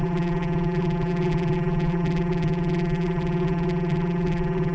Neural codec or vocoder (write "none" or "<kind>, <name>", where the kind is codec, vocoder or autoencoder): vocoder, BigVGAN v2